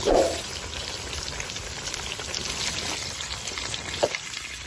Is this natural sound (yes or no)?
yes